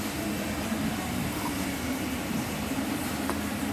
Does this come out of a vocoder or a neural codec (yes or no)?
yes